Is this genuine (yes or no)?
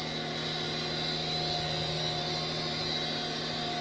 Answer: yes